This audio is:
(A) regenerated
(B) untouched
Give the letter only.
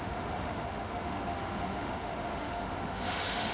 A